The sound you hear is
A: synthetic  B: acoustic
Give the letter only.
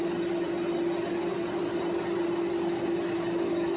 B